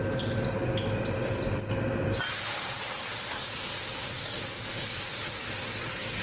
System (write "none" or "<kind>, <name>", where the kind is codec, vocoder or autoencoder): none